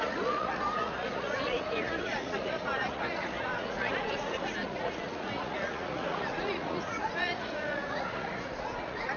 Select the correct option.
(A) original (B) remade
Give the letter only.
B